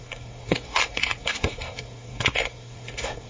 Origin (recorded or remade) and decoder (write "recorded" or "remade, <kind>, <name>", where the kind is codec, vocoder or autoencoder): remade, codec, SNAC